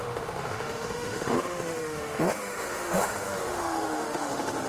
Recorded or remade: remade